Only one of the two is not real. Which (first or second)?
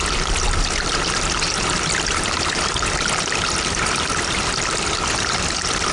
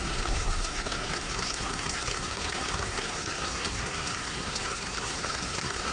second